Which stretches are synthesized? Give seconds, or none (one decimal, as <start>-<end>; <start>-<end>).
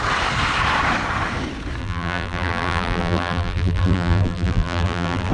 1.8-5.3